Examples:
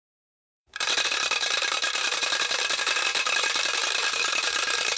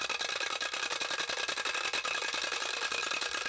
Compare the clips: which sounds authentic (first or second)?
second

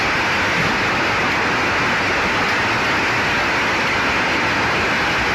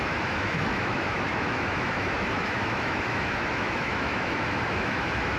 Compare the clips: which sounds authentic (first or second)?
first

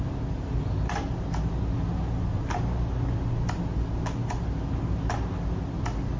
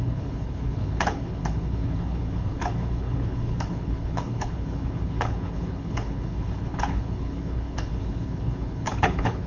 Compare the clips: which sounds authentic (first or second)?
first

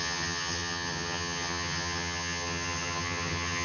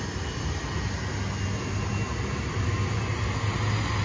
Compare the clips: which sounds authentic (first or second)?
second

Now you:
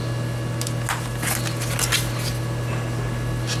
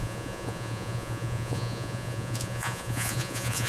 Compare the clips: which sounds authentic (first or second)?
first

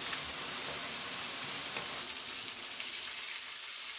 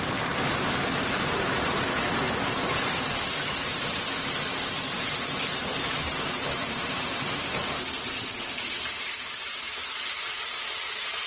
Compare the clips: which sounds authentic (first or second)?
first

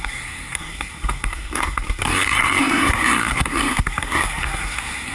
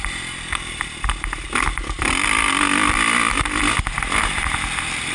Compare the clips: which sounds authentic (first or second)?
second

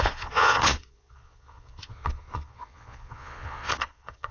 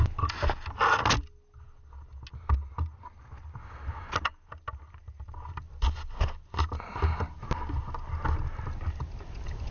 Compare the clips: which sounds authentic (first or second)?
second